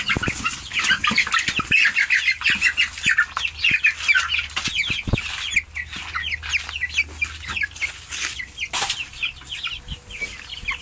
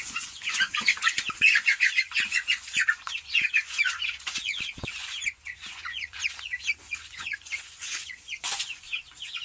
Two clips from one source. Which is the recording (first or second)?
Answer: first